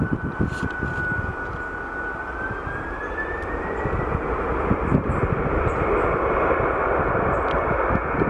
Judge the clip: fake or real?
real